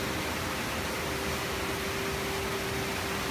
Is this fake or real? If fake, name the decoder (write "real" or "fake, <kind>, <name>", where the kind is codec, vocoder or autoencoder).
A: real